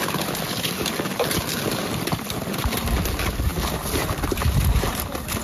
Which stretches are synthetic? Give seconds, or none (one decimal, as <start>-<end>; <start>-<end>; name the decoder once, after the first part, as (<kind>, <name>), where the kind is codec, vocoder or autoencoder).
none